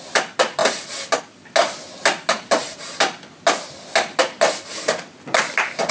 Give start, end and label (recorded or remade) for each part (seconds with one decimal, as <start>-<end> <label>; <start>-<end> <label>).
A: 0.0-5.9 recorded

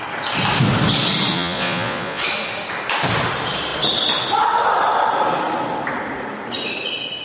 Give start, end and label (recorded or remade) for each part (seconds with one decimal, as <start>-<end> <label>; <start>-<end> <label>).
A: 0.0-1.3 recorded; 1.3-2.2 remade; 2.2-7.2 recorded

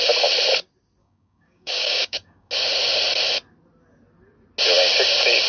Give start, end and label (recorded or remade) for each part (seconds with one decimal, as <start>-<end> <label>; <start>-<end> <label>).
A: 0.0-1.0 recorded; 1.0-2.5 remade; 2.5-5.5 recorded

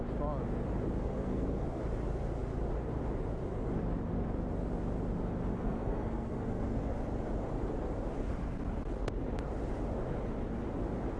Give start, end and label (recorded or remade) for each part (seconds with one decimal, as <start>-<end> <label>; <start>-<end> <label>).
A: 0.0-1.0 recorded; 1.0-1.8 remade; 1.8-5.5 recorded; 5.5-6.9 remade; 6.9-11.2 recorded

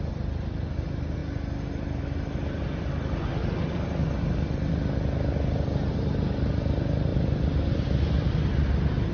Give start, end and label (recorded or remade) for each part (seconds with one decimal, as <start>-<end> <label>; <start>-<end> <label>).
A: 0.0-7.1 recorded; 7.1-8.5 remade; 8.5-9.1 recorded

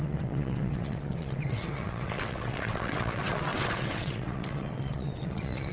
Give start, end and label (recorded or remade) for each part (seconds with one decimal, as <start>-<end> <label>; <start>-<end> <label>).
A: 0.0-5.7 remade

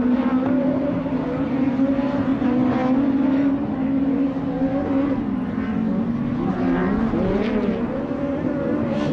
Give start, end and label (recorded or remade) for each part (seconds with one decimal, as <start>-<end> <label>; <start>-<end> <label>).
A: 0.0-2.3 remade; 2.3-6.5 recorded; 6.5-9.1 remade